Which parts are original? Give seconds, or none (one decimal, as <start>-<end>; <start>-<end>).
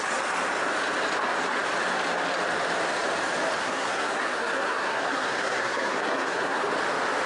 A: 0.0-3.6; 6.6-7.3